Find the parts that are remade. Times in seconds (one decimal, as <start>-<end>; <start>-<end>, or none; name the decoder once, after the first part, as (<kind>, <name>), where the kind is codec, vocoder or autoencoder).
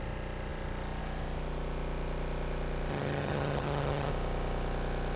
2.9-4.1 (vocoder, HiFi-GAN)